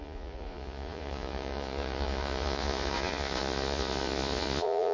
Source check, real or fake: fake